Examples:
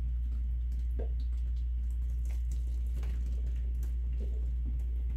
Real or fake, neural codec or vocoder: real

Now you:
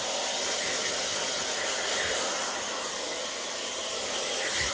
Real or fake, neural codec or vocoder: real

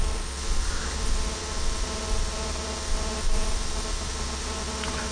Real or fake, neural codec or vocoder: fake, vocoder, Vocos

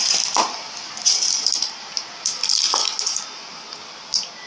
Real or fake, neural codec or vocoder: real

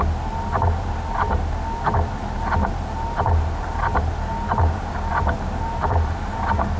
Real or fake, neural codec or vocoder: real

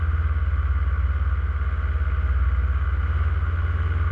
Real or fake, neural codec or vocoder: real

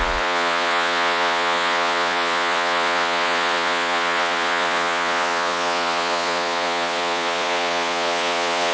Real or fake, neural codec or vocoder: fake, vocoder, Vocos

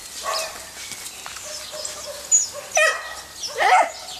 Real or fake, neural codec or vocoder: real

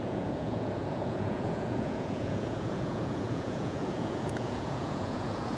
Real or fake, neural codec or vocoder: fake, vocoder, Vocos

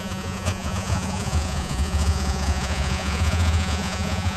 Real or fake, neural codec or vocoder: fake, vocoder, Vocos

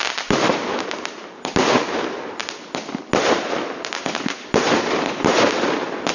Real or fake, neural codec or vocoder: real